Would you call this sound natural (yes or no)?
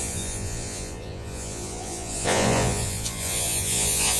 no